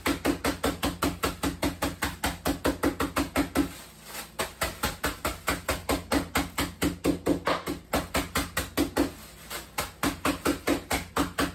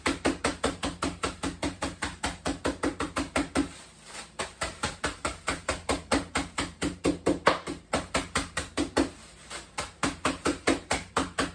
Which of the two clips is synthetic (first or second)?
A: second